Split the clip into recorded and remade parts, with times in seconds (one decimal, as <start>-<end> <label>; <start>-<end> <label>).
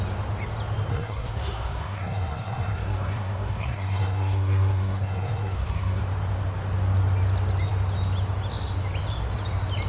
0.0-0.9 recorded; 0.9-6.0 remade; 6.0-9.9 recorded